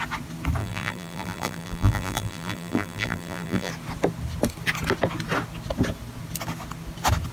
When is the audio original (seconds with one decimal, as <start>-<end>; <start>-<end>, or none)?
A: 0.0-0.6; 3.7-7.3